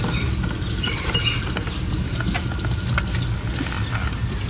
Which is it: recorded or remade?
recorded